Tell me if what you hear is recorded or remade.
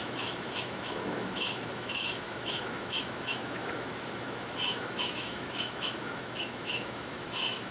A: remade